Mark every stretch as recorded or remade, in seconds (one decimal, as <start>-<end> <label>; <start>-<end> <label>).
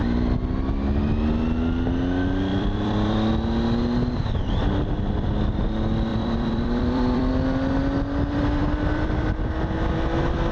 0.0-2.5 recorded; 2.5-3.3 remade; 3.3-6.1 recorded; 6.1-7.3 remade; 7.3-8.6 recorded; 8.6-9.9 remade; 9.9-10.5 recorded